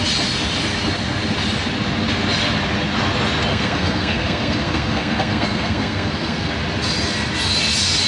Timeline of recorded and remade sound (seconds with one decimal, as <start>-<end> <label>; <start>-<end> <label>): 0.0-3.5 recorded; 3.5-6.5 remade; 6.5-8.1 recorded